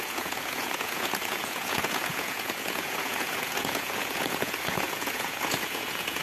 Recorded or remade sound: remade